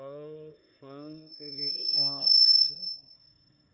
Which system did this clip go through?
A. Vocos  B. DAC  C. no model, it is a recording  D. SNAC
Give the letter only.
D